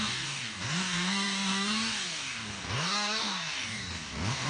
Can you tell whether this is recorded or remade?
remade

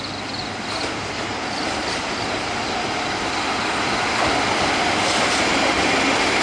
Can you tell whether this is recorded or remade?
recorded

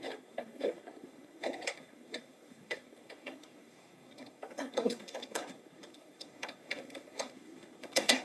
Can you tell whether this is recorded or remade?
remade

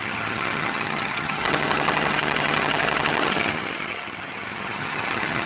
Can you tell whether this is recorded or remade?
remade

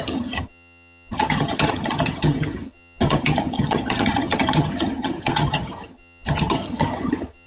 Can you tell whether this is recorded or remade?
remade